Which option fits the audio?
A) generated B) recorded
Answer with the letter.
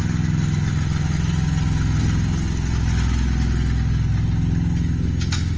B